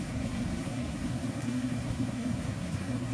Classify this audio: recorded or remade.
remade